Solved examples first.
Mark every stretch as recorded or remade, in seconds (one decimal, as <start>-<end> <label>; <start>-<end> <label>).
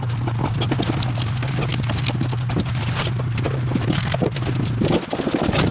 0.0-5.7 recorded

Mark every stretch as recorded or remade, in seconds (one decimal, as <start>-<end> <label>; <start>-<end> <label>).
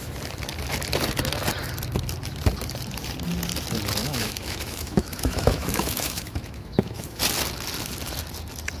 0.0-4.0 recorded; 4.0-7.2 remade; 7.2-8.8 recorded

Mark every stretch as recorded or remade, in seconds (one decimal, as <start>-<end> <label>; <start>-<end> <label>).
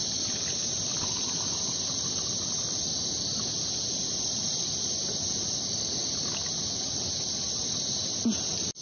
0.0-8.8 recorded